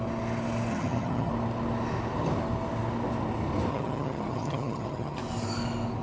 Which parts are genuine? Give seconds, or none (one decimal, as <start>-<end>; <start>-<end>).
0.0-0.7; 1.3-3.7; 5.2-6.0

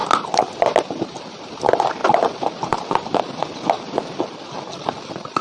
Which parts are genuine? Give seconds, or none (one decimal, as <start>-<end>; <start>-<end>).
0.0-5.4